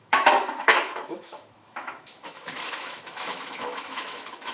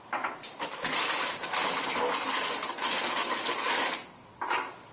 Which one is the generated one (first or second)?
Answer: first